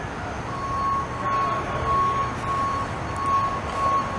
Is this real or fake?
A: real